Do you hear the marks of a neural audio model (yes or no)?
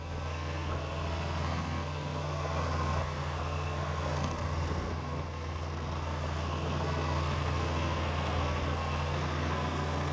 yes